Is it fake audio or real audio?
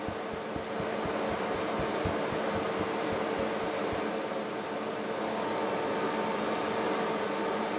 real